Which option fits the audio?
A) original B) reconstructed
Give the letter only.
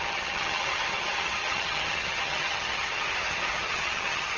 B